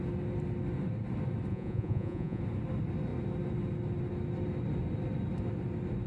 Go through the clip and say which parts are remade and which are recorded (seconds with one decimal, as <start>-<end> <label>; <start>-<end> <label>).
0.0-1.5 recorded; 1.5-2.4 remade; 2.4-6.1 recorded